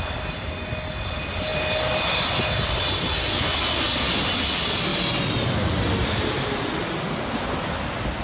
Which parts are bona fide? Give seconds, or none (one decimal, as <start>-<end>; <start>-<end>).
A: 0.0-1.5; 3.1-8.2